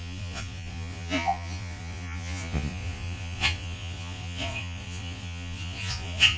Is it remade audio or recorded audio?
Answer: remade